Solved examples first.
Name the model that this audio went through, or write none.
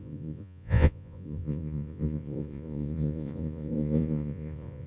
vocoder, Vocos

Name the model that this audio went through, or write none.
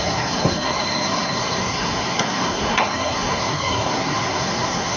codec, SNAC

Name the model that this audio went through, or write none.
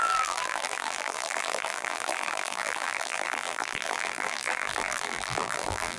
vocoder, BigVGAN v2